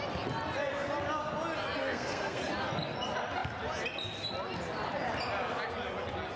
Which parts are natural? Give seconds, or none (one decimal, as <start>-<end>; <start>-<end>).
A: 0.0-1.8; 2.4-6.4